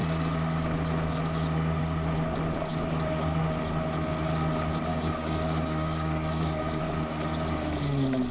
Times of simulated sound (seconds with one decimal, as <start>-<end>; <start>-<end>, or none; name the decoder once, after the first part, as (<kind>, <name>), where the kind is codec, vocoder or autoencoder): 4.9-6.8 (codec, DAC)